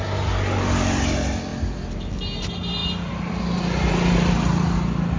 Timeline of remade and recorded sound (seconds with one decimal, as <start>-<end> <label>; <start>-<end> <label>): 0.0-5.2 recorded